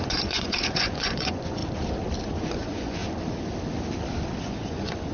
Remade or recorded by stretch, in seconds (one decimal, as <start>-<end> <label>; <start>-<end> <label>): 0.0-1.6 remade; 1.6-2.4 recorded; 2.4-3.0 remade; 3.0-4.4 recorded; 4.4-5.1 remade